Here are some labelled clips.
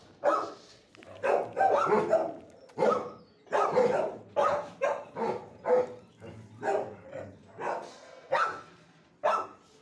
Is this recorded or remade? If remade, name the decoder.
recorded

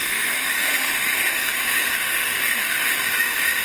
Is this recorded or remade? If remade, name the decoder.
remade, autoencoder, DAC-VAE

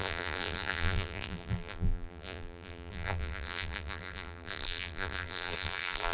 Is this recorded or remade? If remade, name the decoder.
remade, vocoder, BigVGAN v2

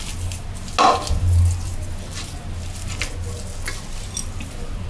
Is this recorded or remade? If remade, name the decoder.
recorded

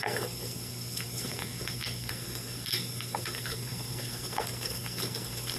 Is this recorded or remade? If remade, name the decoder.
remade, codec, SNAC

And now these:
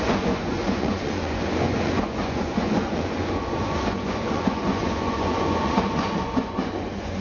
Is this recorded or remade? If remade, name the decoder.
remade, vocoder, Vocos